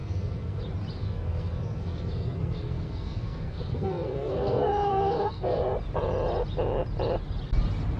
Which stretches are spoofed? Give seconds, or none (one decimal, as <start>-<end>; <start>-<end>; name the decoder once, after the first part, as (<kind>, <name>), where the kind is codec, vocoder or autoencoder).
0.0-0.6 (codec, SNAC); 1.0-5.6